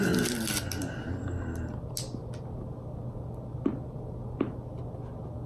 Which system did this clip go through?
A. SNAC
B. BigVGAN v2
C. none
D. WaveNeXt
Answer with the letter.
C